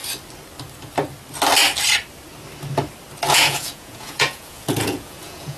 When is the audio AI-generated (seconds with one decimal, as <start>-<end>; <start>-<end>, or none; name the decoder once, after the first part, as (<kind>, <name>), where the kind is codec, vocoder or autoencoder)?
3.3-5.6 (vocoder, Vocos)